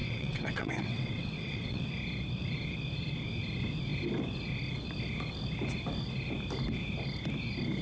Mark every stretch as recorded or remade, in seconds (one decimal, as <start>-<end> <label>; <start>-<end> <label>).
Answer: 0.0-1.9 remade; 1.9-7.8 recorded